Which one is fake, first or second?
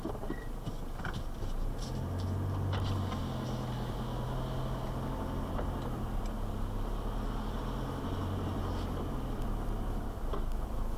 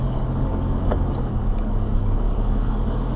second